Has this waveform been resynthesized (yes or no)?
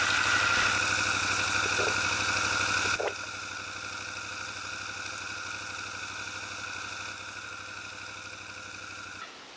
no